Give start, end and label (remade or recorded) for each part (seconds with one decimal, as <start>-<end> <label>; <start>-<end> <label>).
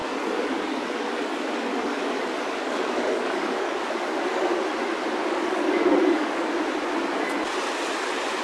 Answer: 0.0-4.6 remade; 4.6-5.2 recorded; 5.2-6.5 remade; 6.5-8.4 recorded